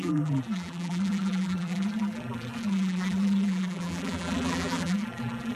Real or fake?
fake